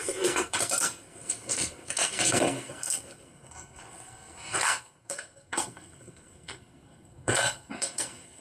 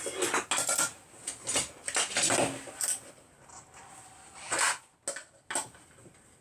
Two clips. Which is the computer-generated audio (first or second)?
first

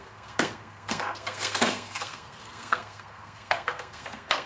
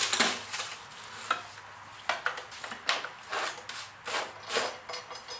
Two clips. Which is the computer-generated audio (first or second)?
first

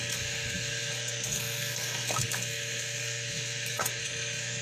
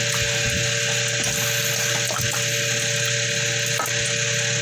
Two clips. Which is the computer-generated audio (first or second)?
first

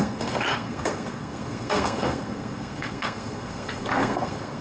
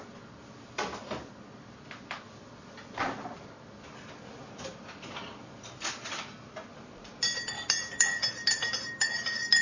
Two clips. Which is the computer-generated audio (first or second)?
first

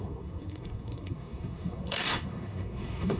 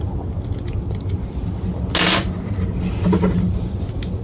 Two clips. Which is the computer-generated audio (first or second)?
first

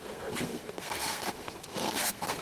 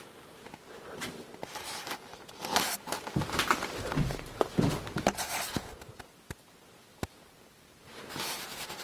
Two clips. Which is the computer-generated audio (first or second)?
first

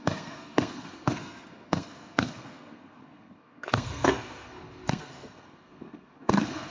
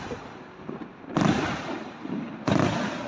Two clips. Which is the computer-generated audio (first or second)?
first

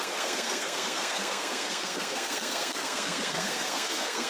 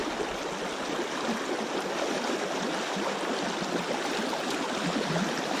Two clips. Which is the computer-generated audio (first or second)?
first